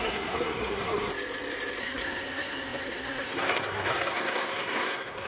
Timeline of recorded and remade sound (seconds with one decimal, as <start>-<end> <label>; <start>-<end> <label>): 0.0-1.1 remade; 1.1-1.8 recorded; 1.8-5.3 remade